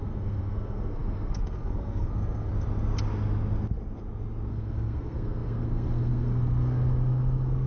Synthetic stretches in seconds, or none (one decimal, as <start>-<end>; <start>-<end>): 0.0-2.5; 4.5-7.7